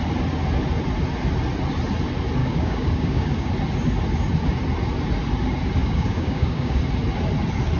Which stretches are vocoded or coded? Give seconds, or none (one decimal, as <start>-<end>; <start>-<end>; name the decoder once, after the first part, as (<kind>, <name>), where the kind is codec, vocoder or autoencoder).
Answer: 2.4-3.5 (codec, DAC); 5.8-6.8